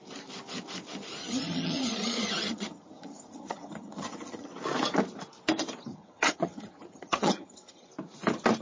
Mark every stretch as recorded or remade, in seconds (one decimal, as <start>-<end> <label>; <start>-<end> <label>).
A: 0.0-1.2 recorded; 1.2-4.5 remade; 4.5-5.9 recorded; 5.9-7.9 remade; 7.9-8.6 recorded